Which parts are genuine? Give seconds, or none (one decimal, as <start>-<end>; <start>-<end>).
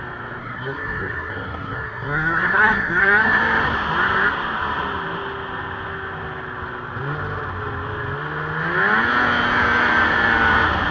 0.0-0.4; 3.4-10.9